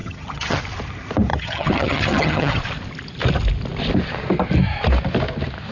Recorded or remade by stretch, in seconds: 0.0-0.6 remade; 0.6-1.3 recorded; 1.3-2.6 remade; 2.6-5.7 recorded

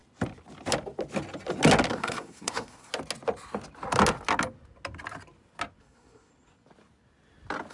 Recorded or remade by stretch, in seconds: 0.0-1.9 recorded; 1.9-2.9 remade; 2.9-5.8 recorded; 5.8-6.3 remade; 6.3-7.7 recorded

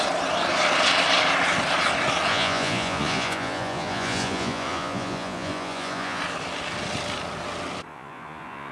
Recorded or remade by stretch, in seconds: 0.0-2.3 recorded; 2.3-6.2 remade; 6.2-7.9 recorded; 7.9-8.7 remade

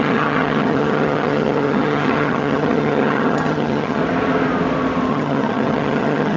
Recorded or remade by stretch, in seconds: 0.0-4.0 remade; 4.0-5.1 recorded; 5.1-6.4 remade